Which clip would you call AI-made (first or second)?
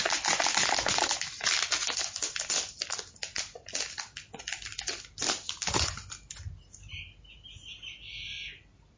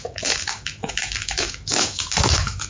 second